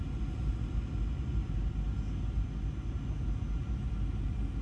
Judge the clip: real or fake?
real